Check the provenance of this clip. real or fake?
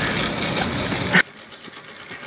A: real